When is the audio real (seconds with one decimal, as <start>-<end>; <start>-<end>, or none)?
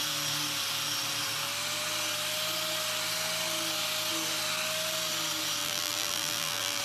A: 0.0-5.6